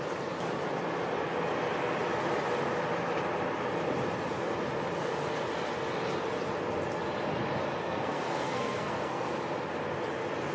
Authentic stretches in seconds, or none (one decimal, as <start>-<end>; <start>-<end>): 0.0-7.8; 9.3-10.5